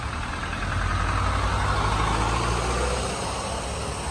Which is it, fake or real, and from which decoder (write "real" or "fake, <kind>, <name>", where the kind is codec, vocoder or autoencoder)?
real